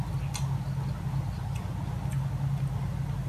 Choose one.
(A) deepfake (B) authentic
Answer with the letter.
B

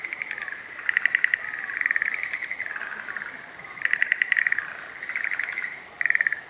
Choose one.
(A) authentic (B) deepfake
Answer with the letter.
A